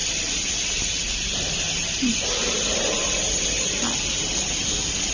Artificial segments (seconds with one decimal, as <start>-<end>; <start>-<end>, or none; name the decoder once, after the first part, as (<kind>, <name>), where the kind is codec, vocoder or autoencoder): 0.0-0.9 (vocoder, BigVGAN v2); 2.1-3.7